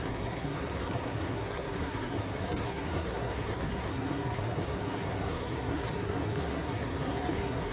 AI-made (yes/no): yes